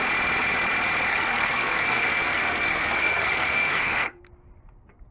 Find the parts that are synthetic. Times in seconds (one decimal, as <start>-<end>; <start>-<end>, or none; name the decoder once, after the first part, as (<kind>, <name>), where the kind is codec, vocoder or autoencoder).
1.1-4.2 (codec, SNAC)